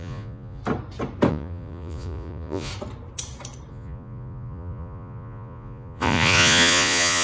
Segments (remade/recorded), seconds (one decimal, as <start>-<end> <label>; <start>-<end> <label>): 0.0-0.6 remade; 0.6-1.3 recorded; 1.3-2.7 remade; 2.7-3.7 recorded; 3.7-7.2 remade